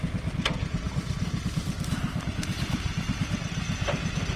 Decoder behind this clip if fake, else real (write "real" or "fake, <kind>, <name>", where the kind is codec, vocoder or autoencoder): real